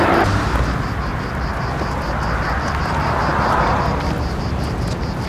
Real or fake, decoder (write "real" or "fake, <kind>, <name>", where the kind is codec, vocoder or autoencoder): real